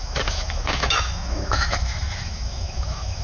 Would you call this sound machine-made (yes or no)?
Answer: yes